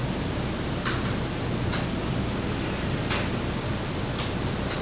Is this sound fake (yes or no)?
no